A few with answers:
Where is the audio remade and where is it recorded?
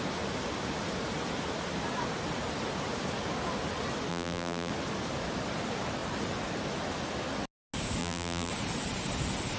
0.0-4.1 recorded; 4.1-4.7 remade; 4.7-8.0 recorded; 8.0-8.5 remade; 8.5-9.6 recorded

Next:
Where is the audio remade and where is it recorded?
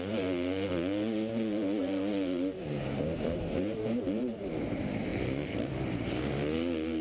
0.0-7.0 remade